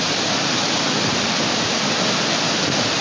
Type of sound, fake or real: fake